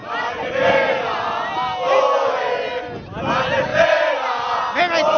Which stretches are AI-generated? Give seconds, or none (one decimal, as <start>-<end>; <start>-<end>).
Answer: none